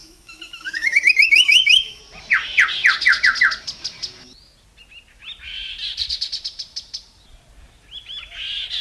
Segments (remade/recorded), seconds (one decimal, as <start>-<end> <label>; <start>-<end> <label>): 0.0-2.0 remade; 2.0-8.8 recorded